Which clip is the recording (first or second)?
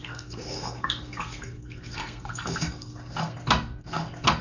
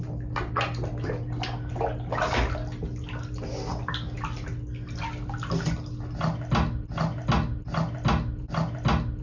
second